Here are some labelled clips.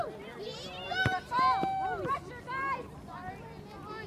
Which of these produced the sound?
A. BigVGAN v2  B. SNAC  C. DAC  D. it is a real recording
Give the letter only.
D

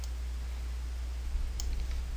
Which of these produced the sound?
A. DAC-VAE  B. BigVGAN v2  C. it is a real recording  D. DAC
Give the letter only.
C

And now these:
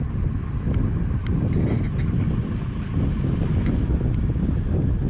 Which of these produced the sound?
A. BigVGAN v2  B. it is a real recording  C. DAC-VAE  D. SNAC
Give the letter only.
B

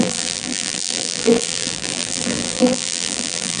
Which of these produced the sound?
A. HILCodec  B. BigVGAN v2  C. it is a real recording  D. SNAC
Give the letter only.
B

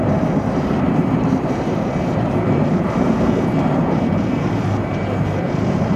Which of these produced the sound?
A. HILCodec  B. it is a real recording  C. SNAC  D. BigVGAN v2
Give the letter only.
D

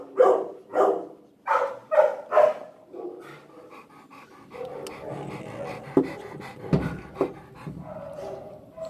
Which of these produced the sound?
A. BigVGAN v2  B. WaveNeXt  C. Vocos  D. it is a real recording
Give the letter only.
D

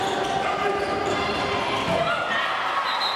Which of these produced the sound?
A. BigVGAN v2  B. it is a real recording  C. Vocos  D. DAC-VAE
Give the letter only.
B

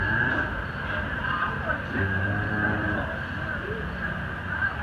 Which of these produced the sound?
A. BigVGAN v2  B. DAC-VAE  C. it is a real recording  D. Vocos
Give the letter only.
A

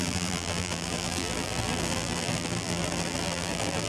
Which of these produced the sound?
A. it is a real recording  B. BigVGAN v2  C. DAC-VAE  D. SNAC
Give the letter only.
B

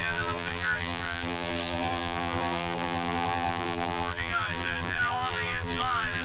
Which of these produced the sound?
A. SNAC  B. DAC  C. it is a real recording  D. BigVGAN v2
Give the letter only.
D